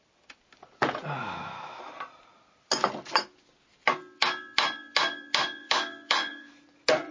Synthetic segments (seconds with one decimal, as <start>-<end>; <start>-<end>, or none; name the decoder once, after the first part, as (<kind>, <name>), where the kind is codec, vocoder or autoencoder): 1.2-1.8 (autoencoder, DAC-VAE); 5.6-6.5